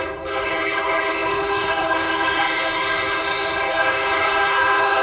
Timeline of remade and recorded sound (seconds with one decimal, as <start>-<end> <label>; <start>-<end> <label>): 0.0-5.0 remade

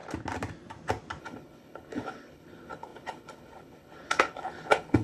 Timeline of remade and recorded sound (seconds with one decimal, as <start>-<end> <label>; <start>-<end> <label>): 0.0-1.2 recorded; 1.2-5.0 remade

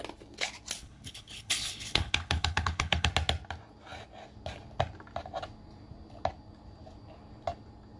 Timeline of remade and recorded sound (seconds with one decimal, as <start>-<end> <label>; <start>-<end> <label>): 0.0-0.8 recorded; 0.8-3.1 remade; 3.1-8.0 recorded

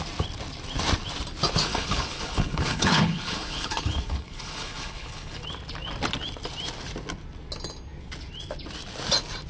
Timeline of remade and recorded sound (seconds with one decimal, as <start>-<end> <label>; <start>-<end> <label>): 0.0-1.7 recorded; 1.7-5.4 remade; 5.4-9.5 recorded

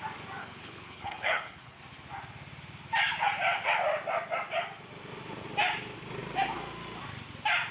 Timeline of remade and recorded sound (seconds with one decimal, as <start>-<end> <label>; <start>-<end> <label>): 0.0-0.4 recorded; 0.4-1.8 remade; 1.8-7.7 recorded

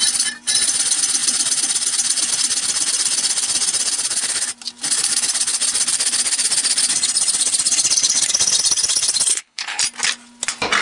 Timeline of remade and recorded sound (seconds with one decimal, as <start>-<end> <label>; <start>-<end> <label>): 0.0-9.3 recorded; 9.3-9.8 remade; 9.8-10.8 recorded

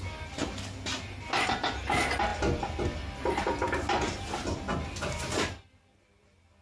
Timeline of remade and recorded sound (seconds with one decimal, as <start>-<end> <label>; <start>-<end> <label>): 0.0-6.6 recorded